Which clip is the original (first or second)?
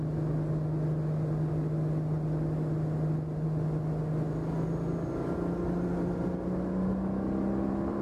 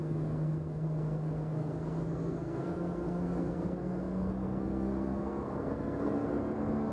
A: first